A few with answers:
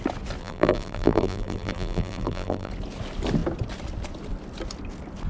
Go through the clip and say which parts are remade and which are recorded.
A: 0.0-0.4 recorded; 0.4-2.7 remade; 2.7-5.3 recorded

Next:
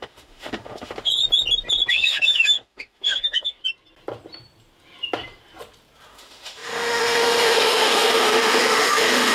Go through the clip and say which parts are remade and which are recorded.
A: 0.0-1.1 remade; 1.1-1.9 recorded; 1.9-3.6 remade; 3.6-6.1 recorded; 6.1-9.3 remade

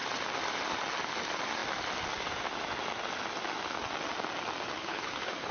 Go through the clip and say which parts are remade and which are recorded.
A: 0.0-4.8 recorded; 4.8-5.5 remade

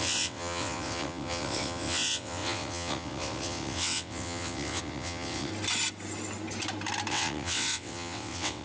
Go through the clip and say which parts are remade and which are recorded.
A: 0.0-5.5 remade; 5.5-7.1 recorded; 7.1-8.6 remade

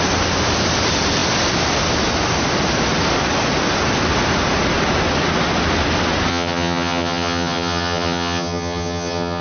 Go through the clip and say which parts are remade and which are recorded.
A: 0.0-6.3 recorded; 6.3-9.4 remade

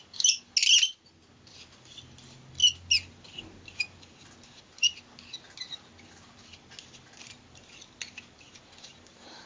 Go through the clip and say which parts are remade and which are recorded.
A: 0.0-9.5 recorded

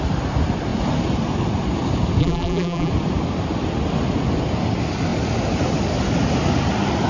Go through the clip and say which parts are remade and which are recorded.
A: 0.0-2.2 recorded; 2.2-2.9 remade; 2.9-7.1 recorded

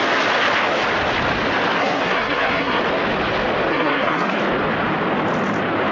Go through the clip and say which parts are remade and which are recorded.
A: 0.0-1.8 recorded; 1.8-2.8 remade; 2.8-3.7 recorded; 3.7-4.4 remade; 4.4-5.9 recorded